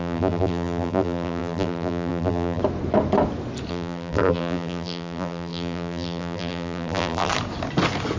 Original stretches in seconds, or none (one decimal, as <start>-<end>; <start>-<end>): 2.6-3.7; 7.3-8.2